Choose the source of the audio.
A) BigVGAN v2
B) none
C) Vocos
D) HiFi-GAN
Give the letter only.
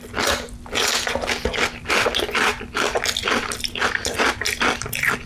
B